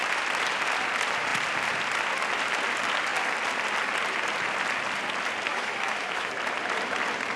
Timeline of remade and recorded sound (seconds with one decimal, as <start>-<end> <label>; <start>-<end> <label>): 0.0-5.5 recorded; 5.5-6.3 remade; 6.3-7.4 recorded